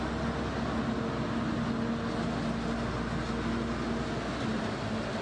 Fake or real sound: real